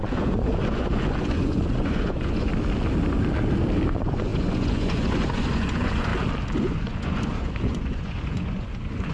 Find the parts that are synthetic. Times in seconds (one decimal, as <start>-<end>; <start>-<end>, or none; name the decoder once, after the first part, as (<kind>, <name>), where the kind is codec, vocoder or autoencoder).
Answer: 0.0-2.5 (vocoder, Vocos); 3.9-6.1; 6.6-9.1